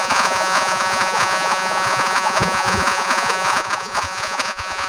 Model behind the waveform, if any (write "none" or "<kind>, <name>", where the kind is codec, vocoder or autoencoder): vocoder, Vocos